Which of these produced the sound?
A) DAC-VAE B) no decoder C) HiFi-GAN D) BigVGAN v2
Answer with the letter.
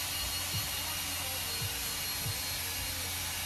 B